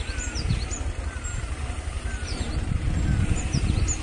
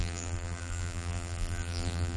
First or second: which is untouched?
first